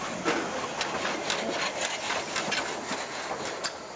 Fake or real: real